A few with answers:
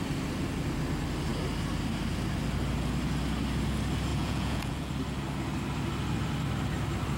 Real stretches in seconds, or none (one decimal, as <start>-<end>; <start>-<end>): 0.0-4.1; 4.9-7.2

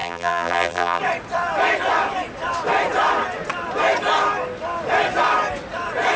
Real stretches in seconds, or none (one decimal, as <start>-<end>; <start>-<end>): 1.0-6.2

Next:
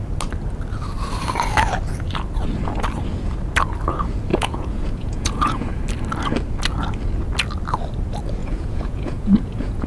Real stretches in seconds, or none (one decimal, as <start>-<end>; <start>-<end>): 0.0-4.3; 5.8-8.4

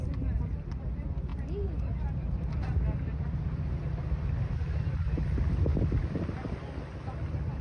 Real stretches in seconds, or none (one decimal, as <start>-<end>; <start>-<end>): 0.0-7.6

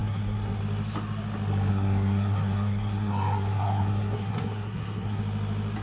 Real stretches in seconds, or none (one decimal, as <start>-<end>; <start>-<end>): 0.6-1.7; 5.2-5.8

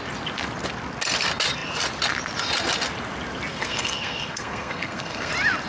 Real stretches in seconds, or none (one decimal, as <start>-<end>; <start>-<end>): 0.0-3.5; 5.3-5.7

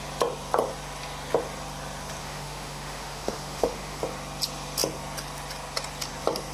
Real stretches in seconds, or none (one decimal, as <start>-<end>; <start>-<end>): 0.0-2.2; 4.0-6.5